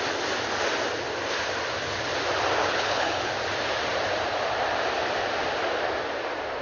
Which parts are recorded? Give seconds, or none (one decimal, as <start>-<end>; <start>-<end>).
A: 0.0-2.6; 3.3-6.6